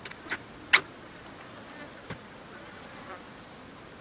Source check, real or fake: real